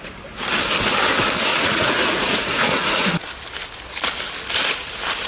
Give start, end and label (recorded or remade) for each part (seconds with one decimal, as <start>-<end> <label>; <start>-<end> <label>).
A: 0.0-1.5 recorded; 1.5-3.1 remade; 3.1-5.3 recorded